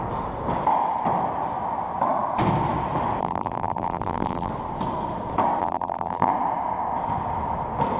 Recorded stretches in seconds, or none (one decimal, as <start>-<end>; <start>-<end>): 0.0-3.2; 4.5-5.6; 6.3-8.0